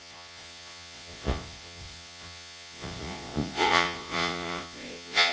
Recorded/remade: remade